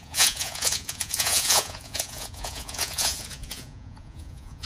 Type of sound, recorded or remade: remade